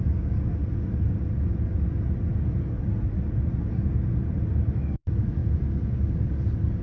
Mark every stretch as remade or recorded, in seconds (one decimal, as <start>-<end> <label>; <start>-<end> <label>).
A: 0.0-0.6 remade; 0.6-4.7 recorded; 4.7-5.4 remade; 5.4-6.8 recorded